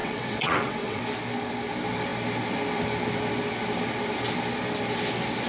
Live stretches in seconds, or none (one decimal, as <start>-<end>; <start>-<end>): 1.0-5.5